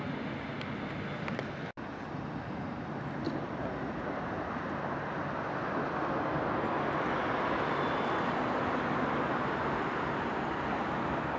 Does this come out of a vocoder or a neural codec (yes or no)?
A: no